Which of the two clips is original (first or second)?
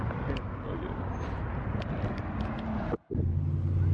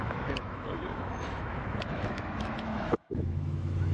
first